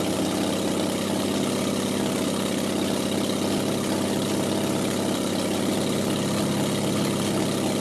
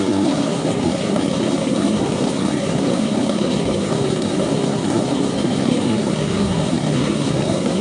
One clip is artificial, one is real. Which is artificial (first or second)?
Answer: second